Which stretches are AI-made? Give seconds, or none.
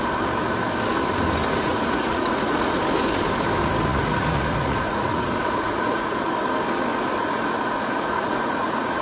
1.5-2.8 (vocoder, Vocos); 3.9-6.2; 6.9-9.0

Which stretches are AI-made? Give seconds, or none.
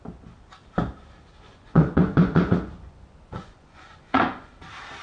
1.5-4.5 (vocoder, Vocos)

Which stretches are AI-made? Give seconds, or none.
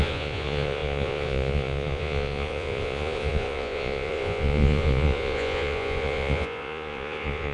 0.0-7.5 (vocoder, Vocos)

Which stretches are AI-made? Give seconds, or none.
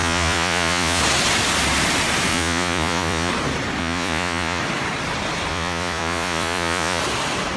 0.0-1.0 (vocoder, Vocos); 2.3-3.3; 3.8-4.6; 5.5-7.0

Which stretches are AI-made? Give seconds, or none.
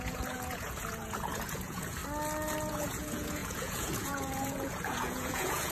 0.0-2.0 (vocoder, Vocos); 2.7-5.7